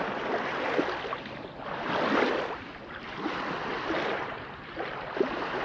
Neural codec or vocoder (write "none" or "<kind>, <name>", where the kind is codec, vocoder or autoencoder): none